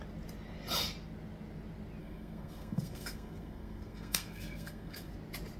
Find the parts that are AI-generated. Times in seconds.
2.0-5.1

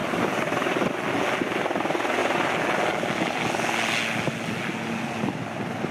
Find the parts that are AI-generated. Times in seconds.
none

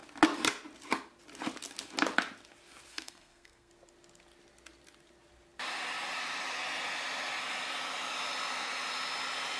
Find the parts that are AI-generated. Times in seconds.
2.9-3.7

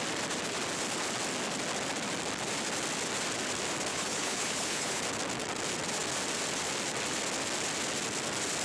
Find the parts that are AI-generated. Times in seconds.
3.9-5.0

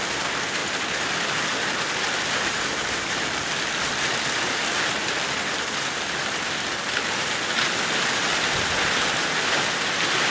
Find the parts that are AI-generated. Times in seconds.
0.0-0.6; 2.0-10.3

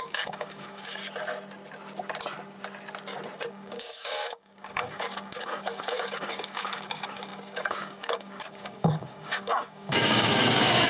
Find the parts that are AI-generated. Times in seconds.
0.0-1.0; 3.5-10.9